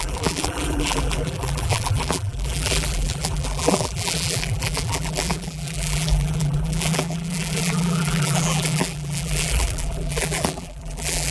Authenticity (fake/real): fake